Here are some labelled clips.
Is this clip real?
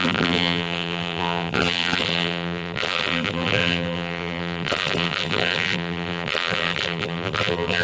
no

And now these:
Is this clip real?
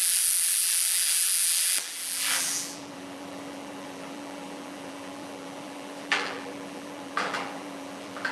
no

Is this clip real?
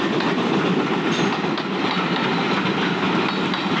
yes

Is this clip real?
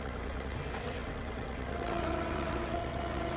no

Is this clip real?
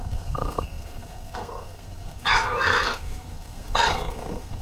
no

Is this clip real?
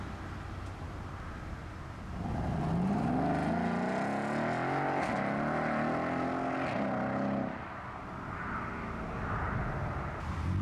yes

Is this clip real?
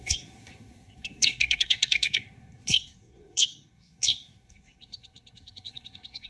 no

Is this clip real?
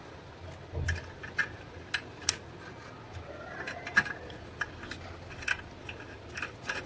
yes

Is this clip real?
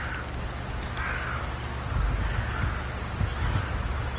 yes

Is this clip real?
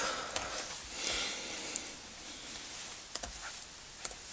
yes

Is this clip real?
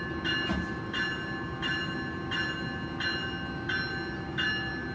yes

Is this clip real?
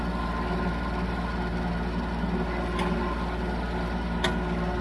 yes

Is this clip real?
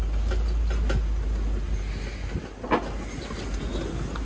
yes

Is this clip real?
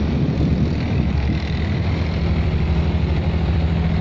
yes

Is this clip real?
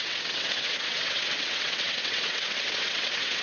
no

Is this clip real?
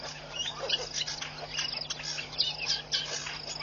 yes